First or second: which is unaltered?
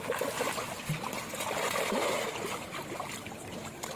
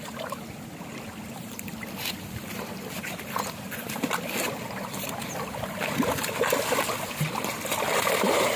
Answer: first